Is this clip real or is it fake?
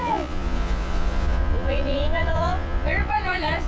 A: fake